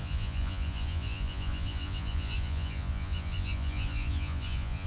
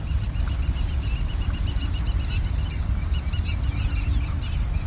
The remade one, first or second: first